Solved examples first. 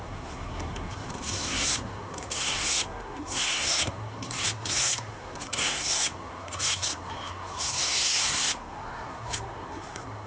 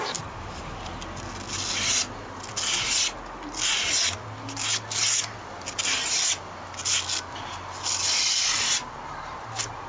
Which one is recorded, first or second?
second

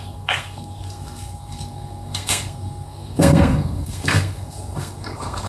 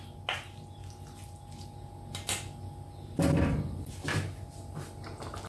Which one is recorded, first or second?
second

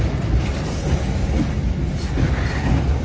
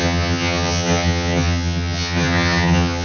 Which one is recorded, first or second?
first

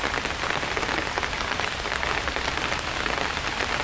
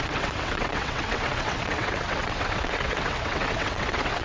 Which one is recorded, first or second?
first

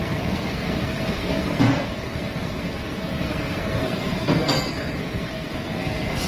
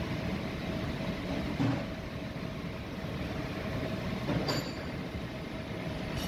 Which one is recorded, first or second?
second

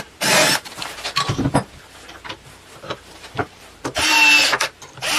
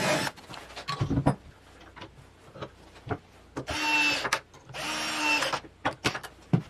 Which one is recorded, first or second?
second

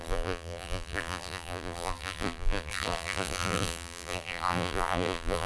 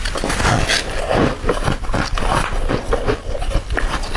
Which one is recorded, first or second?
second